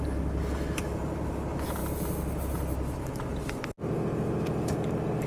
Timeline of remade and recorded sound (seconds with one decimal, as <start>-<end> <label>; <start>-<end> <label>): 0.0-5.3 recorded